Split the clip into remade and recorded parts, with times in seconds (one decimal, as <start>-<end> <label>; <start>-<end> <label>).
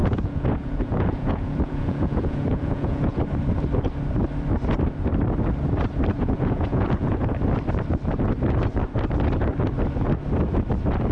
0.0-3.2 remade; 3.2-6.2 recorded; 6.2-7.3 remade; 7.3-11.1 recorded